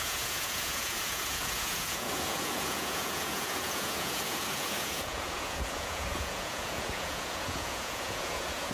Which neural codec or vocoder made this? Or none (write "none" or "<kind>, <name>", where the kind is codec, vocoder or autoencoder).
vocoder, Vocos